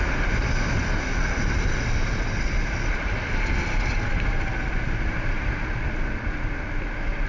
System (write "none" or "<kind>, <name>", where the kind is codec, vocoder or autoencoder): none